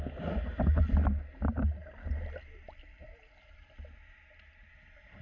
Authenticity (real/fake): real